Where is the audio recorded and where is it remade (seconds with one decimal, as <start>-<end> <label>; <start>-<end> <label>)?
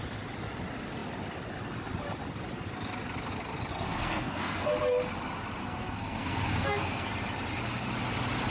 0.0-3.7 recorded; 3.7-4.7 remade; 4.7-5.6 recorded; 5.6-7.1 remade; 7.1-8.5 recorded